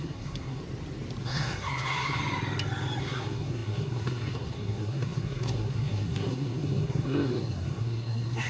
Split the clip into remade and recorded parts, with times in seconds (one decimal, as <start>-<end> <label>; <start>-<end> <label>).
0.0-0.6 remade; 0.6-1.2 recorded; 1.2-2.2 remade; 2.2-3.0 recorded; 3.0-8.5 remade